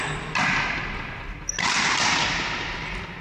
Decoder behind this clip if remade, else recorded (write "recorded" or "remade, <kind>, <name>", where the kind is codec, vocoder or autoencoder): recorded